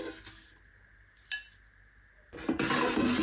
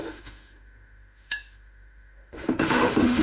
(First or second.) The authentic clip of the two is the first